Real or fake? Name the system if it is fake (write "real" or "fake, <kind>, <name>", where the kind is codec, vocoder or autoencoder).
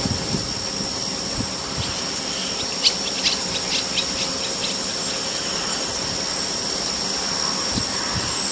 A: real